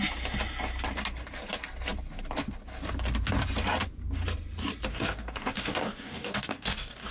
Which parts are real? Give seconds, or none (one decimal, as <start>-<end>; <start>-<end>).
0.0-4.9